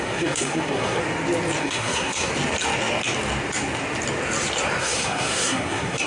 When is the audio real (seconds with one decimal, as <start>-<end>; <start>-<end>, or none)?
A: 1.0-1.6; 2.3-4.8